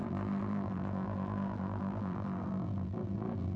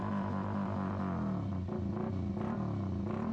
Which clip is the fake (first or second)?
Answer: first